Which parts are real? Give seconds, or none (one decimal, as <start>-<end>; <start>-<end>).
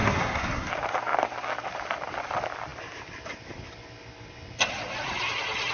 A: 0.7-5.7